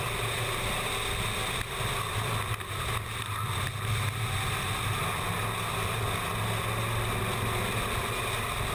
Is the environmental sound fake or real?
real